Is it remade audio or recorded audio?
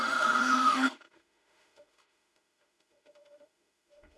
remade